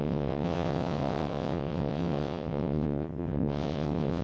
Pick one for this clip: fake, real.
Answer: fake